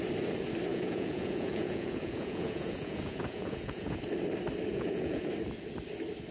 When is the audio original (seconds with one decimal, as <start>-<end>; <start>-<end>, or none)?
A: 0.0-0.7; 4.0-4.7; 5.3-6.3